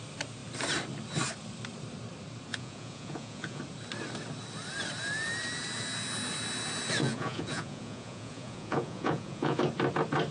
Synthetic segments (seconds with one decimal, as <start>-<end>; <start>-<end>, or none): 2.5-3.6; 7.0-9.6